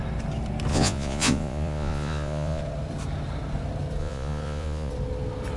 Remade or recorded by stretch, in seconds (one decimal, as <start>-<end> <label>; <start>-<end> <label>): 0.0-0.7 recorded; 0.7-2.6 remade; 2.6-4.0 recorded; 4.0-4.9 remade; 4.9-5.6 recorded